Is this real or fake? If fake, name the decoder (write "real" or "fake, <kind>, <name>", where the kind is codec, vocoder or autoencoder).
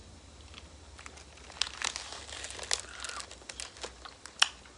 real